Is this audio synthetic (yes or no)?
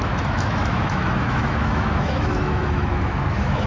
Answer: yes